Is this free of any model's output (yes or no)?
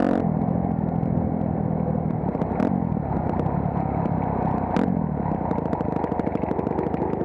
yes